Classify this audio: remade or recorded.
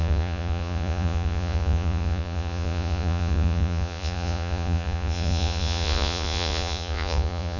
remade